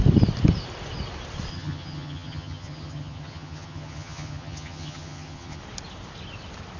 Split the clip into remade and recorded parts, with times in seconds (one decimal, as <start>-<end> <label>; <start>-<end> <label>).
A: 0.0-1.5 recorded; 1.5-5.6 remade; 5.6-6.8 recorded